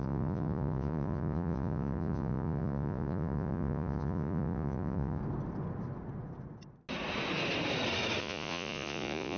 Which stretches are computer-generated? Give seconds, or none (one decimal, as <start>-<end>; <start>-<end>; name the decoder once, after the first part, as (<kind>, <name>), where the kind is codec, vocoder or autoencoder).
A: 0.0-5.2 (vocoder, Vocos); 8.2-9.4